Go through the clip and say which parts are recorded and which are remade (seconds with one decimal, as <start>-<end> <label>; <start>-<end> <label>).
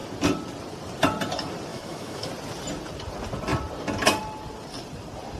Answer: 0.0-1.7 recorded; 1.7-2.3 remade; 2.3-5.4 recorded